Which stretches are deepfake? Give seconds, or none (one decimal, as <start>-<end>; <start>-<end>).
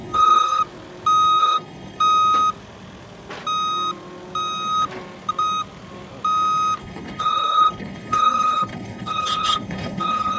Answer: 0.0-0.6; 1.4-2.0; 6.8-10.4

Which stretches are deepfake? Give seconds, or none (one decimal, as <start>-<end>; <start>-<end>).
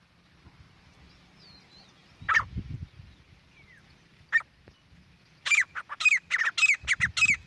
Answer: 5.2-6.0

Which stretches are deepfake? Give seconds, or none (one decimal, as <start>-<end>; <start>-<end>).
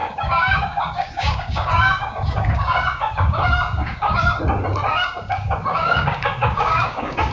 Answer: 0.0-4.4; 4.9-7.3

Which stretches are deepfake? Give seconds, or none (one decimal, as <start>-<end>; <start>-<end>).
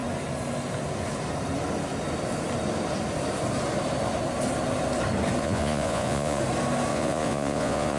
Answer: 5.4-6.4; 6.9-8.0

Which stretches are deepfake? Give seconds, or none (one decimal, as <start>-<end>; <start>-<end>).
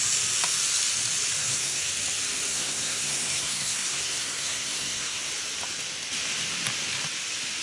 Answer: 1.4-1.9; 2.5-5.3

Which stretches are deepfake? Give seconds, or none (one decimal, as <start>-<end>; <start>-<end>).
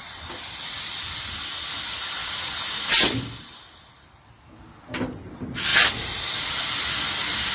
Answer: none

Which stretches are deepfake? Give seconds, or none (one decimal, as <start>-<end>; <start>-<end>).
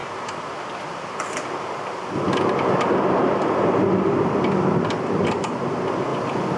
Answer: none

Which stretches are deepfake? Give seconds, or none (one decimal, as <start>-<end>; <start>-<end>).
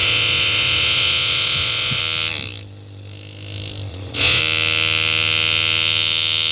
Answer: 0.0-2.0; 3.9-4.4